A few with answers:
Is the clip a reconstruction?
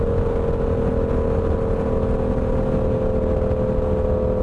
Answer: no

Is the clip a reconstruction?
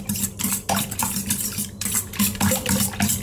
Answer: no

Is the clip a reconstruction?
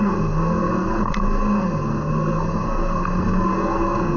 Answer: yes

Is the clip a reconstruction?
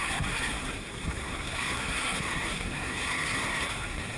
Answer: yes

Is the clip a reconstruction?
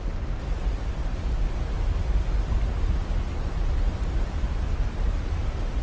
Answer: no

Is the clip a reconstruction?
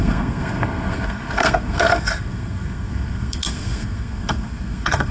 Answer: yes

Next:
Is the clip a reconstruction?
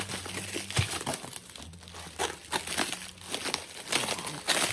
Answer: no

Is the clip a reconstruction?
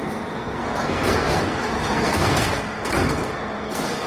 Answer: yes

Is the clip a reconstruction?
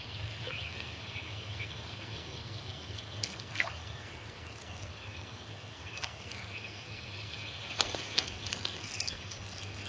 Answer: yes